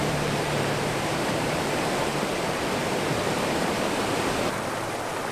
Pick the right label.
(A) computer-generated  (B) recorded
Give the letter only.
A